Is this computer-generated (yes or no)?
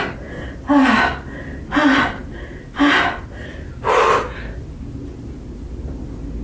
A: no